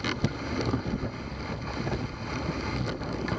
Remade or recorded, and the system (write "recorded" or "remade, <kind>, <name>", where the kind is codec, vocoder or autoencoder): recorded